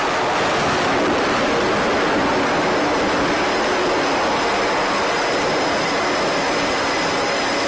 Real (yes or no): yes